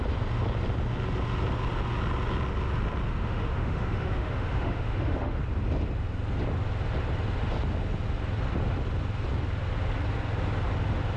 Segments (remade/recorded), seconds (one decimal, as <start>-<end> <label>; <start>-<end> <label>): 0.0-3.1 recorded; 3.1-5.4 remade; 5.4-11.2 recorded